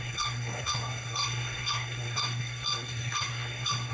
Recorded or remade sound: remade